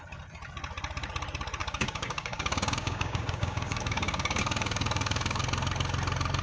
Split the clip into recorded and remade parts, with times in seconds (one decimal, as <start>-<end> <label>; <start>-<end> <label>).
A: 0.0-1.6 recorded; 1.6-5.4 remade; 5.4-6.4 recorded